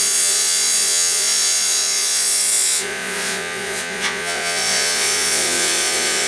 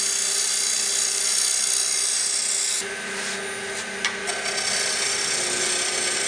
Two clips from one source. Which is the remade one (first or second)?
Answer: first